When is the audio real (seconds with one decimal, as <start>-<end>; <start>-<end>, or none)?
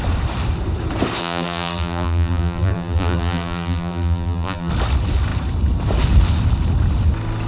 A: 0.0-1.2; 4.7-7.5